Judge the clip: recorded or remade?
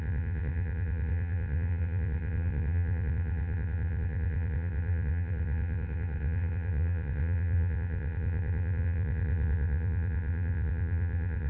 remade